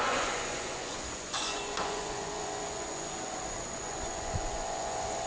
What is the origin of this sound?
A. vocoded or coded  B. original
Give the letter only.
A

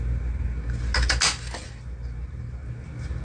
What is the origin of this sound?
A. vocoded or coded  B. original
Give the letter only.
B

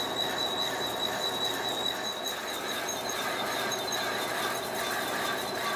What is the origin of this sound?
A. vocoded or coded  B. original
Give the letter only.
B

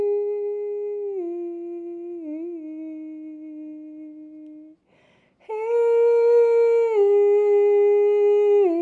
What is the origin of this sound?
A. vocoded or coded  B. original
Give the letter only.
B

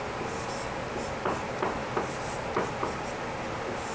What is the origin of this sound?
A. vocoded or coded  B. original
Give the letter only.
B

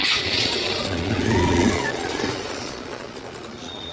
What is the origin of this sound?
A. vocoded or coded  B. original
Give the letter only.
A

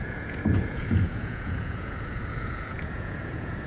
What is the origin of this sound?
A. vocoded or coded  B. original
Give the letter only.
A